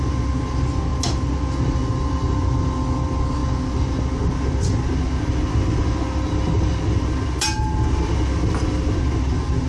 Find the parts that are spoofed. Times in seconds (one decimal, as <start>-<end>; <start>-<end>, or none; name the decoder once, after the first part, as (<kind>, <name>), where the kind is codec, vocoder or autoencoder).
none